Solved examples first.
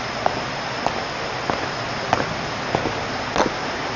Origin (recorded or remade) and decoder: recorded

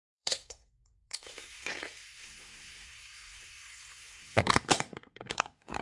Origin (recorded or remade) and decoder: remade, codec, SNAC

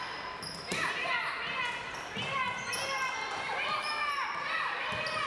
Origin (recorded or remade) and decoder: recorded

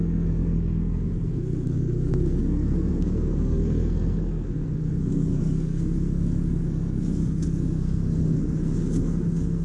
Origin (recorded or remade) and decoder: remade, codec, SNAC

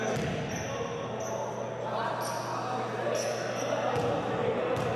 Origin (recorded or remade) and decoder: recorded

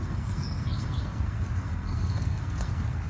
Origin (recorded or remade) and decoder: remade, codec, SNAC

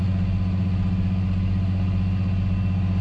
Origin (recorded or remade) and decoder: recorded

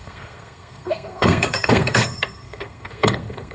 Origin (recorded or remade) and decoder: remade, codec, SNAC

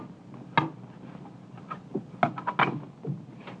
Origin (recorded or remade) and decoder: recorded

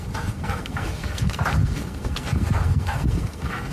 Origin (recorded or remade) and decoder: remade, codec, SNAC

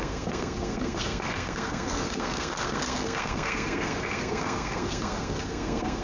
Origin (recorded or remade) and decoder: remade, codec, SNAC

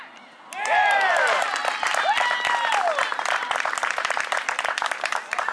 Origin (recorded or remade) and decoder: recorded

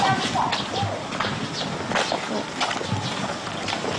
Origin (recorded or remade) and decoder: recorded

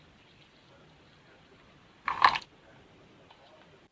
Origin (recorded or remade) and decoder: recorded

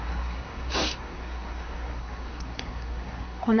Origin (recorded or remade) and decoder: remade, codec, SNAC